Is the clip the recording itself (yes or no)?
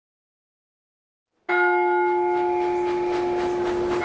yes